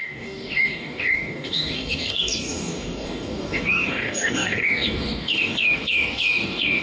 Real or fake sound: fake